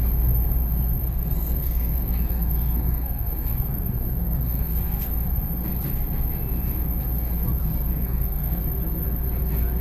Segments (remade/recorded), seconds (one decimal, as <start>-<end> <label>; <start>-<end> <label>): 0.0-1.0 recorded; 1.0-5.4 remade; 5.4-7.9 recorded; 7.9-8.6 remade; 8.6-9.8 recorded